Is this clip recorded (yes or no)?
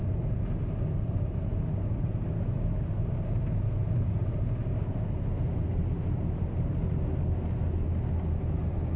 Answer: yes